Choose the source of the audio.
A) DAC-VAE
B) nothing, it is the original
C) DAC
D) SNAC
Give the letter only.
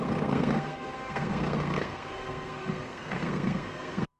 D